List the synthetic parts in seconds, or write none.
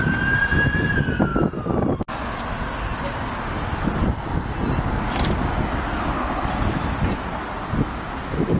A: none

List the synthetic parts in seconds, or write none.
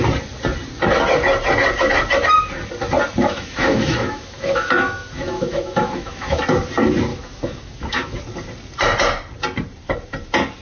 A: 3.2-6.4; 7.1-8.2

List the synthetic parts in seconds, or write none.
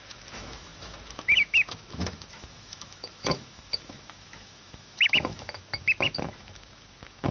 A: 0.0-7.3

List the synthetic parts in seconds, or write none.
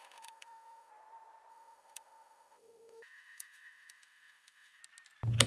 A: 0.0-0.9; 1.5-4.8